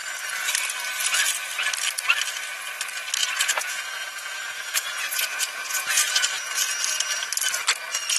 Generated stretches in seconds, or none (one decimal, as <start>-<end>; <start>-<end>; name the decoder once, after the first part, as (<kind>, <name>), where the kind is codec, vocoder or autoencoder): 3.2-6.3 (vocoder, Vocos)